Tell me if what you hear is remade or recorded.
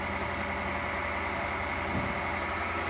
recorded